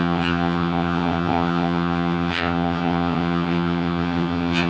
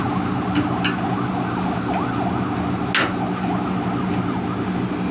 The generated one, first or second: first